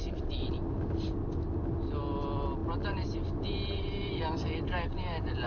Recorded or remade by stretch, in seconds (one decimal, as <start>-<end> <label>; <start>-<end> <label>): 0.0-5.5 recorded